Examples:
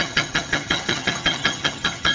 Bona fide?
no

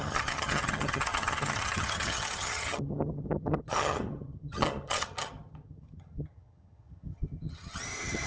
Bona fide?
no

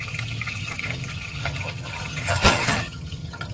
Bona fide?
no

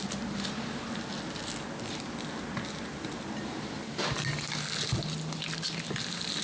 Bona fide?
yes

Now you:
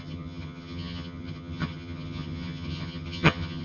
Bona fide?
no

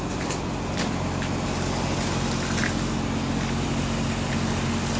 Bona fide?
yes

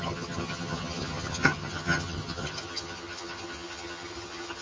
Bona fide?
no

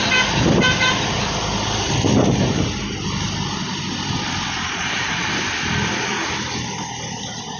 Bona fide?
yes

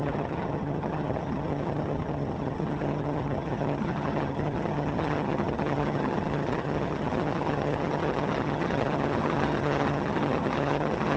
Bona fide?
no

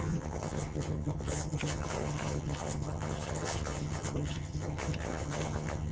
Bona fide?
no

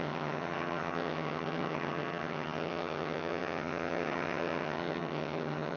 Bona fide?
no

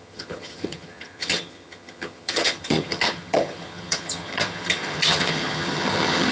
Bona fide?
no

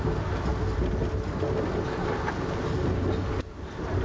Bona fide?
yes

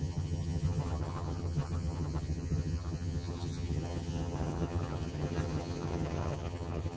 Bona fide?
no